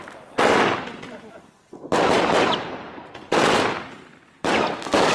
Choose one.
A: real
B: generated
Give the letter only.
A